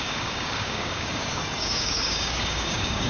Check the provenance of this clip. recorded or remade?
remade